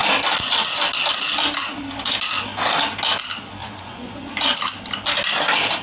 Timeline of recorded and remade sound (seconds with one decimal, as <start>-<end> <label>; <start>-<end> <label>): 0.0-3.6 recorded; 3.6-4.6 remade; 4.6-5.8 recorded